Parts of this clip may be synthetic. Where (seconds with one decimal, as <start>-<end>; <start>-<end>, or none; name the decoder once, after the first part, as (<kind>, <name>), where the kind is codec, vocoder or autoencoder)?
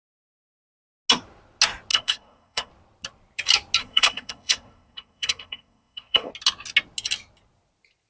1.9-2.7 (codec, SNAC); 3.8-6.3